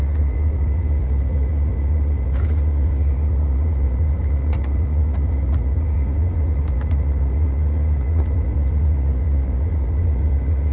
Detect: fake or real fake